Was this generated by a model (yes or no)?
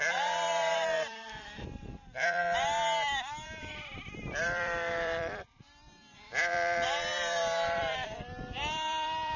yes